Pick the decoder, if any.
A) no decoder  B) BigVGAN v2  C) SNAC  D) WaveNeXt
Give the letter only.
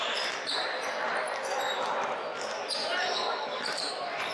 B